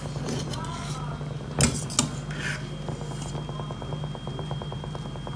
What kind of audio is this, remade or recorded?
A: recorded